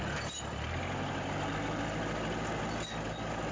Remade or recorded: recorded